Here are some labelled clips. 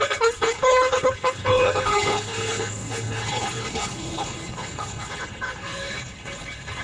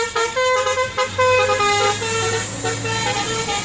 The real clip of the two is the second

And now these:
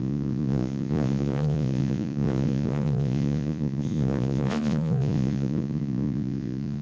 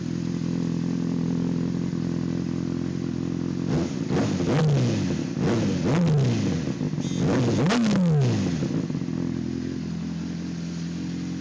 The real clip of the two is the second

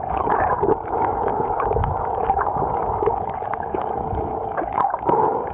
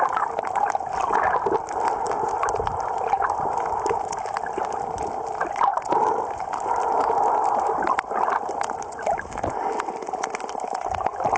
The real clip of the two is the second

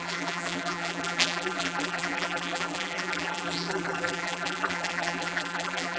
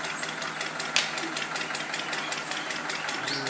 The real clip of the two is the second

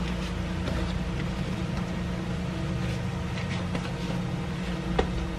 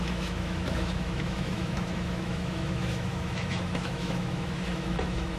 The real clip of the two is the first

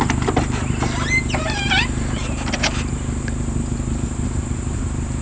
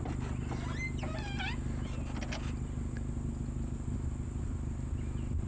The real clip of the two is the second